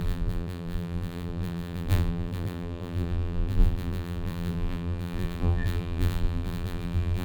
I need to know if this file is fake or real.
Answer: fake